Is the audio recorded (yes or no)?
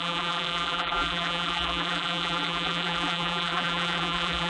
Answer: no